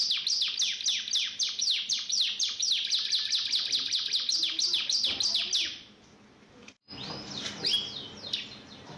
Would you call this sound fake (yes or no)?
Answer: no